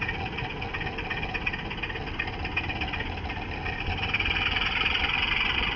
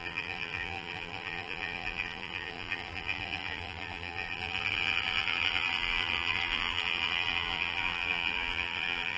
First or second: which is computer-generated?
second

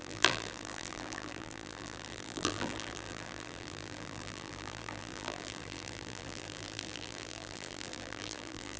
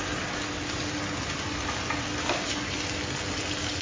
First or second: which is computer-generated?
first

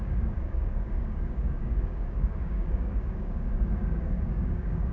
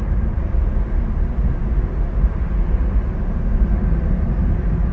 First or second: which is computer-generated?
first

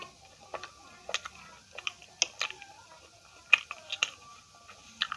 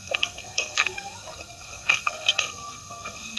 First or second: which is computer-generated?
second